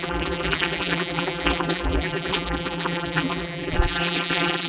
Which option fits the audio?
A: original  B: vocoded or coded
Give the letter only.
B